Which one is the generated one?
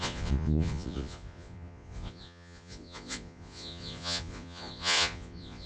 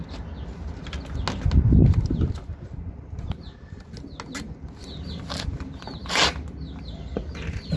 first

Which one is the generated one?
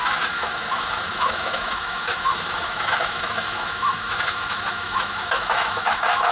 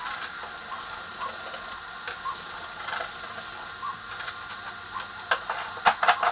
first